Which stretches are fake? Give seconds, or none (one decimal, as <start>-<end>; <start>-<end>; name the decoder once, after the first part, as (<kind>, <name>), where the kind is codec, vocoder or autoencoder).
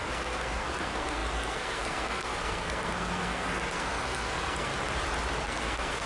0.0-4.7 (codec, SNAC); 5.4-6.1